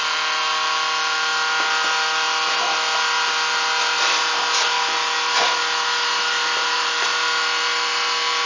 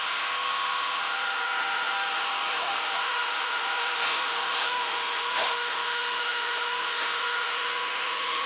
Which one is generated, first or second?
second